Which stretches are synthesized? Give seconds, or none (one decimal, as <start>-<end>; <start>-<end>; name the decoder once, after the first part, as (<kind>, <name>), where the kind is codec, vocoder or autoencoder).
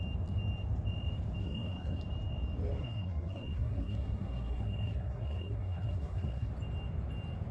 1.4-2.0 (codec, SNAC); 2.8-6.5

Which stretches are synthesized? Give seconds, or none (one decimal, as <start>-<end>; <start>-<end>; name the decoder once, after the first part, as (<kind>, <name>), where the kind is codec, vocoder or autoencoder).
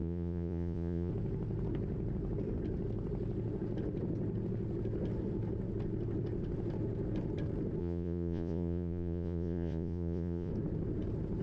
0.0-1.1 (vocoder, Vocos); 7.8-10.5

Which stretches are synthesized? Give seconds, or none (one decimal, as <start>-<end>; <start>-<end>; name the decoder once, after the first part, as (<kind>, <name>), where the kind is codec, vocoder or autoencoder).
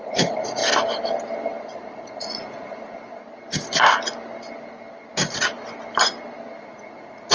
0.0-0.6 (vocoder, Vocos); 1.6-3.2; 6.6-7.3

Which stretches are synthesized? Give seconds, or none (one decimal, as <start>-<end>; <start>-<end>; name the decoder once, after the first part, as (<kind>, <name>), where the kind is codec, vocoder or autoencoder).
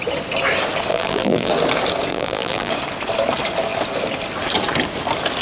0.9-1.5 (vocoder, BigVGAN v2); 2.1-2.7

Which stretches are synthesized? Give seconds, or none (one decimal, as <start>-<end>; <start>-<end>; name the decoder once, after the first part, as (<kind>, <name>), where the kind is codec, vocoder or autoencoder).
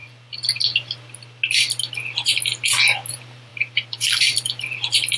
3.1-5.2 (vocoder, BigVGAN v2)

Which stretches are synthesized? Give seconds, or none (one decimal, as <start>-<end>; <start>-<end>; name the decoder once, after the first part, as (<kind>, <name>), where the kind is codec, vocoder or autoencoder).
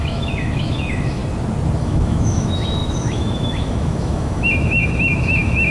0.0-1.2 (autoencoder, DAC-VAE); 1.8-5.7